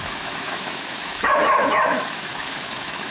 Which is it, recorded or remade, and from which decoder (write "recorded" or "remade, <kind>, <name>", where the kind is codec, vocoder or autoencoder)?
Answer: remade, autoencoder, DAC-VAE